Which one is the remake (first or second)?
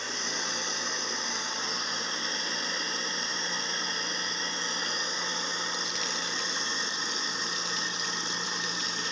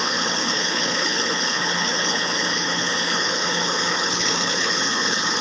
second